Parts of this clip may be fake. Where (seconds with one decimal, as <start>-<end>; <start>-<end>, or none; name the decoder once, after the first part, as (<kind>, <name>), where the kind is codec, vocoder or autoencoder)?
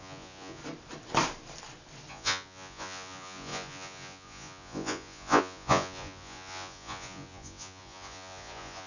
0.0-0.6 (vocoder, Vocos); 2.1-8.9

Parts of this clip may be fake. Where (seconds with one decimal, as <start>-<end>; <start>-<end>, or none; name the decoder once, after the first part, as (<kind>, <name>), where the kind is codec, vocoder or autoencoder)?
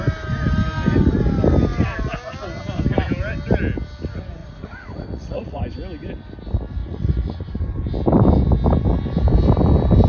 4.4-5.6 (vocoder, Vocos); 6.8-7.6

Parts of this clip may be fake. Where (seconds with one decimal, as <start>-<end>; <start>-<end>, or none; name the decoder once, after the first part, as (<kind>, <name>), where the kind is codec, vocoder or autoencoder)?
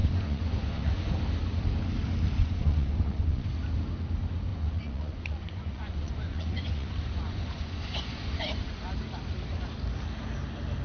0.0-1.1 (vocoder, Vocos); 2.4-3.5; 4.5-8.8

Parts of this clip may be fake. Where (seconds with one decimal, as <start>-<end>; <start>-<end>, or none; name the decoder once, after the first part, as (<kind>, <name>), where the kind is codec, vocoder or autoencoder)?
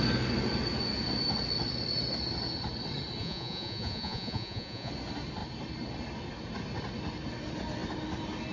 3.2-4.9 (vocoder, Vocos)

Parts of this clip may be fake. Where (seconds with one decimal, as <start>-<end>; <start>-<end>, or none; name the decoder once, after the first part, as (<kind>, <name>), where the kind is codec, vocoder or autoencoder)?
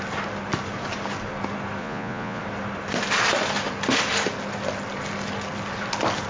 1.8-2.4 (vocoder, Vocos)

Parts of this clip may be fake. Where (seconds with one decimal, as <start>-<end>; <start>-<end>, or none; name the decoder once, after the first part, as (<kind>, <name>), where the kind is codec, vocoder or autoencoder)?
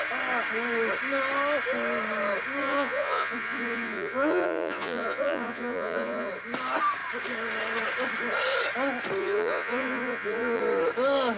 2.6-6.3 (vocoder, Vocos); 9.2-10.6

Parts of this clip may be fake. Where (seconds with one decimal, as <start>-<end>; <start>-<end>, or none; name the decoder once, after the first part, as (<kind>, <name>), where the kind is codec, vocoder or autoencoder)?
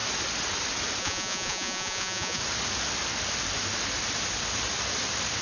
1.0-2.4 (vocoder, Vocos)